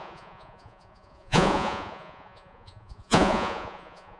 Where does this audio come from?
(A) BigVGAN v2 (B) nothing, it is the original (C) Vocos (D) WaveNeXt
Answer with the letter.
C